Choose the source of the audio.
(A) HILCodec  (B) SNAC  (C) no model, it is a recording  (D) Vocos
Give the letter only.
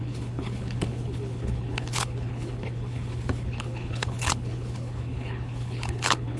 A